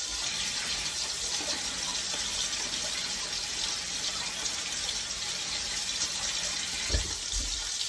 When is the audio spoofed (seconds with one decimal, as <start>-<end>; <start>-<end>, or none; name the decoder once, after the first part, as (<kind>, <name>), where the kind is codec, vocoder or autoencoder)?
none